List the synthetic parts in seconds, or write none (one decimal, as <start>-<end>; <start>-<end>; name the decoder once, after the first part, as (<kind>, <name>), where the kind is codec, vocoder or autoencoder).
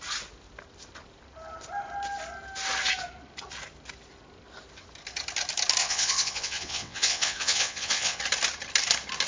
5.8-8.2 (vocoder, WaveNeXt)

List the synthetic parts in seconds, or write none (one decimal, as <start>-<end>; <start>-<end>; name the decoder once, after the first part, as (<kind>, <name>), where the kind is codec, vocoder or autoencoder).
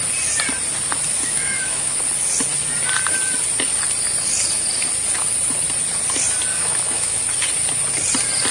1.2-2.0 (autoencoder, DAC-VAE); 6.5-7.2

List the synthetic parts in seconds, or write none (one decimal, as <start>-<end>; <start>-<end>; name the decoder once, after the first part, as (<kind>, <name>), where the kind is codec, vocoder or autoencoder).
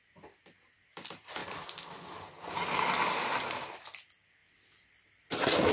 0.0-1.4 (vocoder, BigVGAN v2); 3.1-5.7